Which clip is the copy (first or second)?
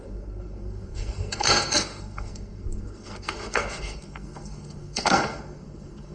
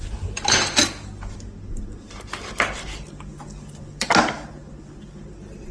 first